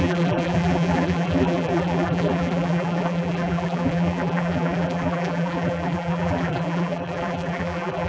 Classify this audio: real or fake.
fake